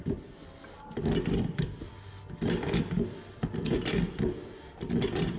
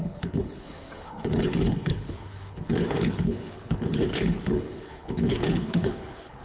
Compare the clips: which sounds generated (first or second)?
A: second